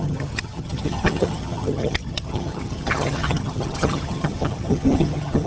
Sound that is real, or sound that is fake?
fake